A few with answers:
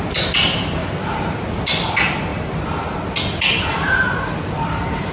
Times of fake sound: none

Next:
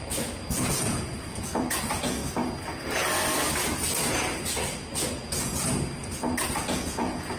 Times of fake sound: 0.0-2.2 (vocoder, Vocos); 5.1-5.5; 6.5-7.4

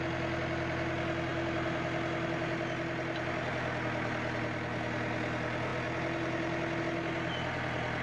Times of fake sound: none

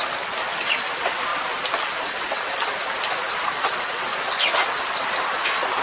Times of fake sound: none

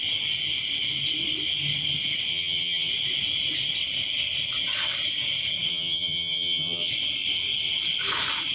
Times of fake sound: 2.3-2.9 (vocoder, HiFi-GAN); 5.7-6.9

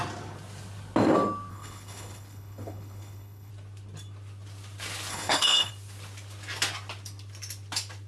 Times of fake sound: 1.5-3.5 (codec, HILCodec); 5.1-5.7